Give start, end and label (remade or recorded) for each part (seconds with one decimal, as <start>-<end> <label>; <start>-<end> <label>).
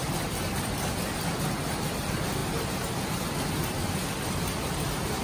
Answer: 0.0-5.2 recorded